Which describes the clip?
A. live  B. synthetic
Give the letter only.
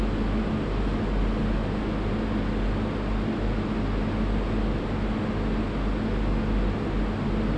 A